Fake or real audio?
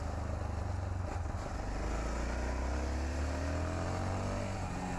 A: real